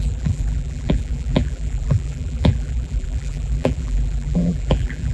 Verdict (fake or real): fake